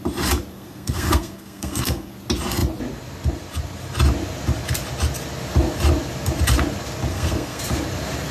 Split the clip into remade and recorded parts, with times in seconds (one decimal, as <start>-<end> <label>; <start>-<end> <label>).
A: 0.0-0.5 recorded; 0.5-2.1 remade; 2.1-7.1 recorded; 7.1-7.6 remade; 7.6-8.3 recorded

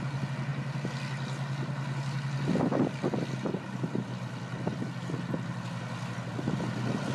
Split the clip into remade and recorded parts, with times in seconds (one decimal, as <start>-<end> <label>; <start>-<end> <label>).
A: 0.0-7.1 recorded

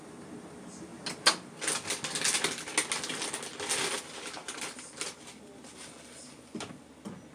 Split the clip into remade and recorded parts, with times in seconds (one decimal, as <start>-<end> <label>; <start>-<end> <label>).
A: 0.0-7.3 recorded